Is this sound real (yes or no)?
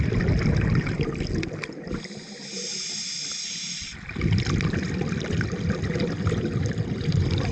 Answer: yes